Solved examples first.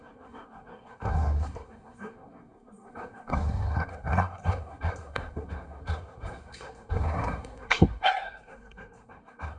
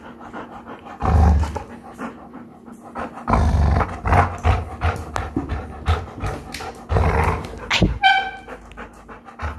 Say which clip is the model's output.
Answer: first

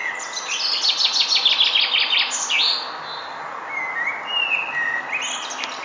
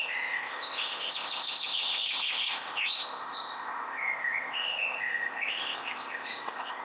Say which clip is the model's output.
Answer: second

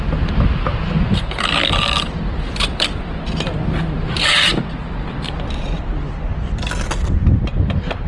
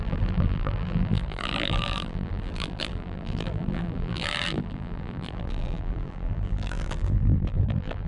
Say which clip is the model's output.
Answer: second